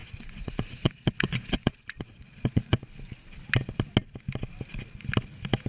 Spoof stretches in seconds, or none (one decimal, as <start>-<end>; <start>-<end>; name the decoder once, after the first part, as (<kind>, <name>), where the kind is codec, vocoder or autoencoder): 0.0-2.8 (vocoder, Vocos)